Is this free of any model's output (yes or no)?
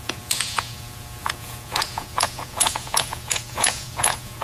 no